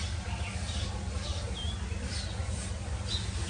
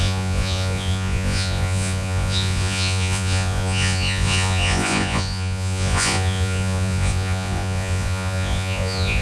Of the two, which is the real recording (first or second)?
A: first